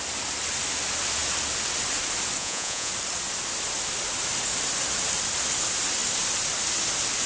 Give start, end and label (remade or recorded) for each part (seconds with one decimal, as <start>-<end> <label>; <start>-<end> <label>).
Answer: 0.0-2.4 recorded; 2.4-2.9 remade; 2.9-7.3 recorded